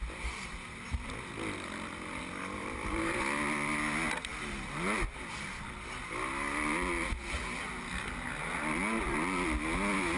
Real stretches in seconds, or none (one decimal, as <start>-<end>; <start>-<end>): 0.0-2.6; 3.2-10.2